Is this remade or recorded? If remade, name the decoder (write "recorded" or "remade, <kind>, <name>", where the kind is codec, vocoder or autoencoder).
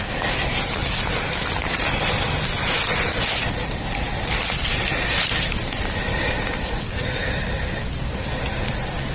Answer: recorded